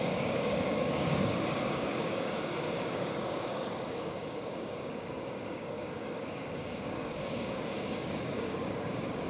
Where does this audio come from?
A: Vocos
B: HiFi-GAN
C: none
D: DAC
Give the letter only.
D